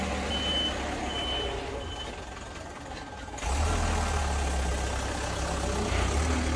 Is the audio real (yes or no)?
yes